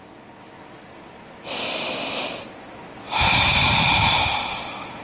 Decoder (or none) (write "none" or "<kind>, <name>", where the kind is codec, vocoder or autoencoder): vocoder, BigVGAN v2